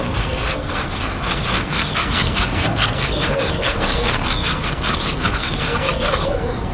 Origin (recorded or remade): remade